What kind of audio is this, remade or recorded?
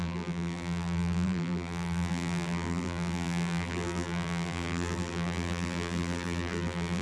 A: remade